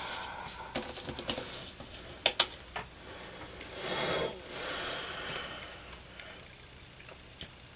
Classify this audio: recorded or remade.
recorded